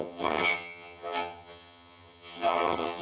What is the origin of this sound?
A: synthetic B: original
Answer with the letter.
A